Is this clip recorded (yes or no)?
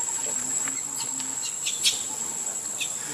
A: yes